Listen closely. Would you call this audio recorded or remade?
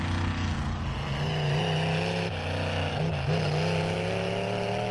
recorded